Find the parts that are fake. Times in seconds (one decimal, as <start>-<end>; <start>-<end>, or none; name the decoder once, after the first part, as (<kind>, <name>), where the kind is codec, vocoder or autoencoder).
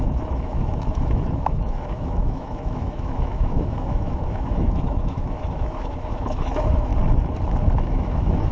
0.0-6.9 (autoencoder, DAC-VAE); 7.8-8.5